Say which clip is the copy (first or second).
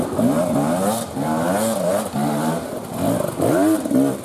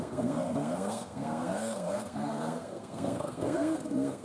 second